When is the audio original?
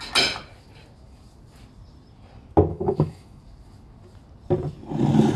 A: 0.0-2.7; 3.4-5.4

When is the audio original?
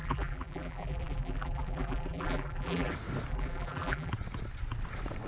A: 2.9-3.3; 4.1-5.3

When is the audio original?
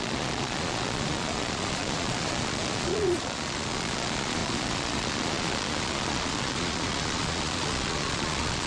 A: none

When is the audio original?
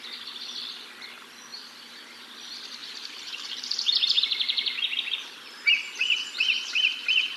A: 0.0-1.5; 2.3-2.8; 6.9-7.4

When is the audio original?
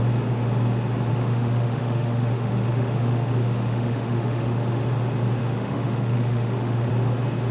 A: 0.0-1.1; 4.9-5.4; 6.9-7.5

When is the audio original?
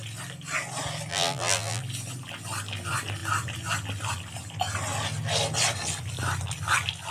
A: 0.0-1.1; 1.8-7.1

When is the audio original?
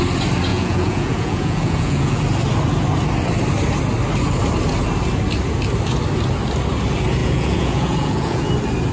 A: 0.0-0.5; 2.2-7.2; 8.5-8.9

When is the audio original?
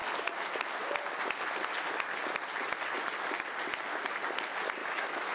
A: 0.0-4.8